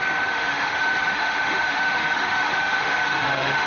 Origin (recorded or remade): remade